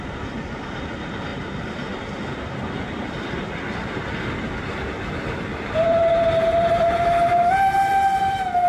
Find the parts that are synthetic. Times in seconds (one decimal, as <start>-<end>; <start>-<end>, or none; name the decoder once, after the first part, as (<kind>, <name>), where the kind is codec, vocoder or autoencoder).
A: 1.3-2.0 (vocoder, BigVGAN v2); 5.5-7.5